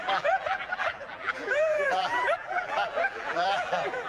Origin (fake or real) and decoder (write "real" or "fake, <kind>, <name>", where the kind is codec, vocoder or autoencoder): fake, vocoder, BigVGAN v2